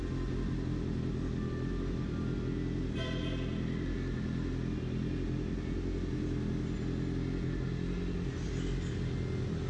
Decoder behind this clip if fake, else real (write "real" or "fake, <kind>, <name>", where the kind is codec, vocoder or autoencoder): real